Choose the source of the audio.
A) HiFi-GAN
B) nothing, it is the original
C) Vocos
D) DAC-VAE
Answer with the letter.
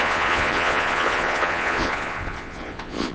C